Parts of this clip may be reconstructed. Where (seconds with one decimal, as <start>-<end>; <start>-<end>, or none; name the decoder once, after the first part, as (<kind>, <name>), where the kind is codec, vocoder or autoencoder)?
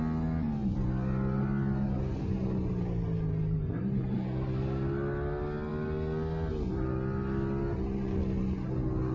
none